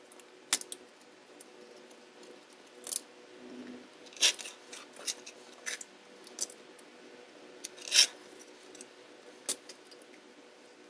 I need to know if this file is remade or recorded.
recorded